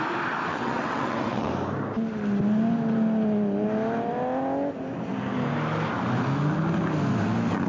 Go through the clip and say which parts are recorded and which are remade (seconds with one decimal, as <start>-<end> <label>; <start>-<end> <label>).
0.0-0.5 recorded; 0.5-1.5 remade; 1.5-7.7 recorded